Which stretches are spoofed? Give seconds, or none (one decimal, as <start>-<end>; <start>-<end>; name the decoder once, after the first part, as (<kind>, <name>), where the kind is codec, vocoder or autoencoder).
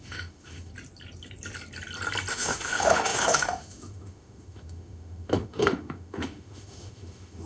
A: 0.0-0.7 (autoencoder, DAC-VAE); 2.3-7.5